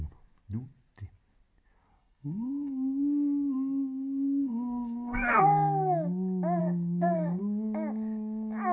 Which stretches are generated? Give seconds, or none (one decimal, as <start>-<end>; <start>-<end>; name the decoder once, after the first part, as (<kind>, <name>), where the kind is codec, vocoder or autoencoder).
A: 1.9-5.4 (codec, SNAC); 6.6-7.4